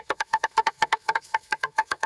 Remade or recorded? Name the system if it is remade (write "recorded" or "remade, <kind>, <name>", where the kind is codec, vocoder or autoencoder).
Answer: remade, codec, SNAC